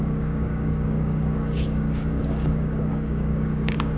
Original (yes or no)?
no